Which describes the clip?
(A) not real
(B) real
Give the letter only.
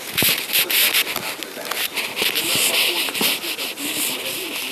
B